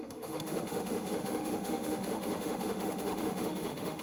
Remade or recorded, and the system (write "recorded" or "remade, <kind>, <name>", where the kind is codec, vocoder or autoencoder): remade, autoencoder, DAC-VAE